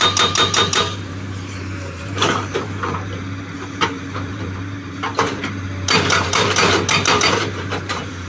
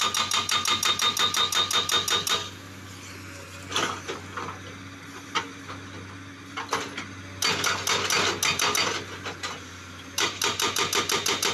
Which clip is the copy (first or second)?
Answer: first